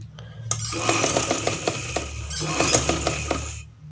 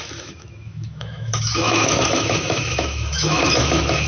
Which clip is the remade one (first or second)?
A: second